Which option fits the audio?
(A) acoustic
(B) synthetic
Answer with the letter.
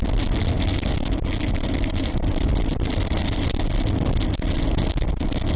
A